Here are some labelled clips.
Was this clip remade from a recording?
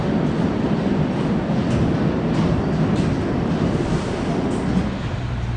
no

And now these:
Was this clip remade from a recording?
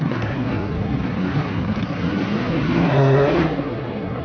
yes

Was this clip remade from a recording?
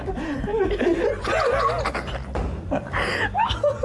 no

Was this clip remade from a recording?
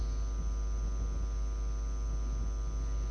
no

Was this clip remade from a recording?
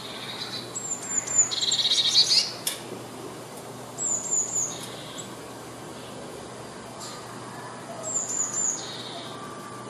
no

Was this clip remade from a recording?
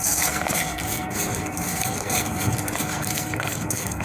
yes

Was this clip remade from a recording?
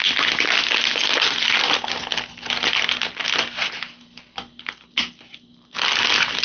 no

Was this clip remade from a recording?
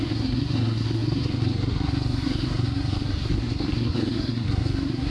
yes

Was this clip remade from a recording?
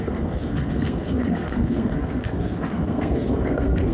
yes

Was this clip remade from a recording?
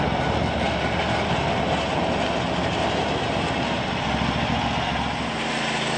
no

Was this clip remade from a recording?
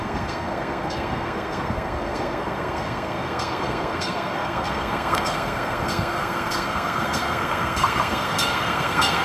yes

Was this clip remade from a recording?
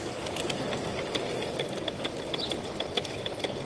no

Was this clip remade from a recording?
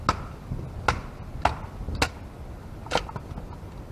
no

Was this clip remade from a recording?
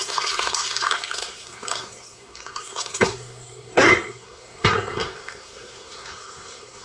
yes